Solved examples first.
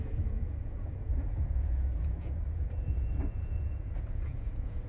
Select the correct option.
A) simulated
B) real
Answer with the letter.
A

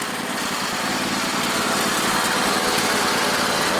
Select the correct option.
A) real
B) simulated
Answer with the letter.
A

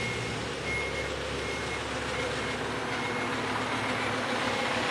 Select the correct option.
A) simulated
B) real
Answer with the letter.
B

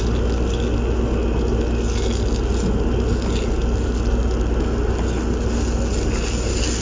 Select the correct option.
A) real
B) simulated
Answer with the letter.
A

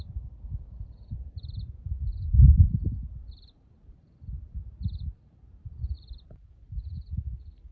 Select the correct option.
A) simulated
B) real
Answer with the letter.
A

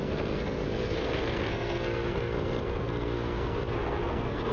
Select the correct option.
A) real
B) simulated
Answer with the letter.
B